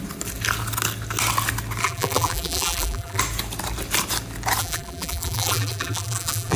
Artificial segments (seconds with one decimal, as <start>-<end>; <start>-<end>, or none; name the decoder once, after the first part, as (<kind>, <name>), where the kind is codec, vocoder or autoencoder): 1.8-3.2 (vocoder, BigVGAN v2); 4.6-6.6